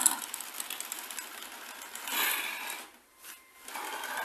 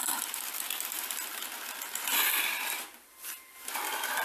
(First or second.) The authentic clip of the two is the first